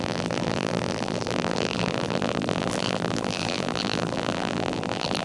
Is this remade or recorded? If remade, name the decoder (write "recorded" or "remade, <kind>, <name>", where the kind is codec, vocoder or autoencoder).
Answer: remade, vocoder, BigVGAN v2